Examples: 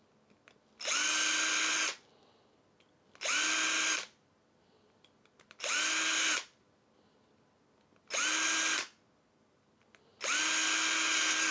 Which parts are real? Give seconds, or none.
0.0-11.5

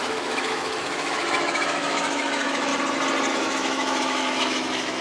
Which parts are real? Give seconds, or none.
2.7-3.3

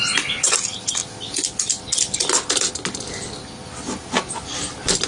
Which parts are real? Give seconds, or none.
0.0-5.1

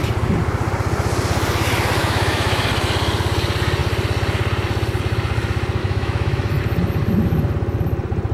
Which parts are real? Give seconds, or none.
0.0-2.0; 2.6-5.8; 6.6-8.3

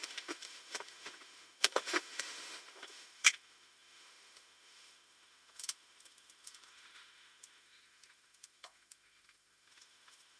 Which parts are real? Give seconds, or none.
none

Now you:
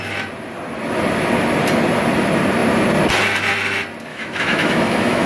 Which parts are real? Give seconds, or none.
0.0-4.1

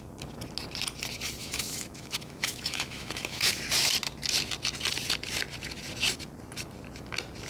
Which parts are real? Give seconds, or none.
0.0-1.4; 3.6-7.5

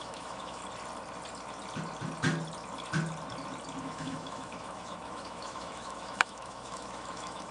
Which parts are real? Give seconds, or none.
0.6-3.8